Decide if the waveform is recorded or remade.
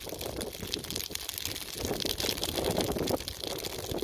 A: recorded